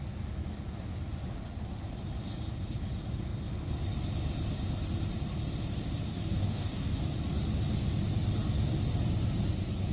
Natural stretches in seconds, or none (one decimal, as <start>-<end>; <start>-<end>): 0.0-6.1; 7.0-9.9